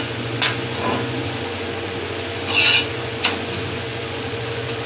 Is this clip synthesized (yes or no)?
yes